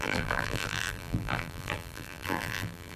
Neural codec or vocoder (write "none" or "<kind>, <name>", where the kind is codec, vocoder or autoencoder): vocoder, BigVGAN v2